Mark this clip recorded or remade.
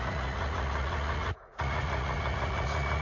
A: remade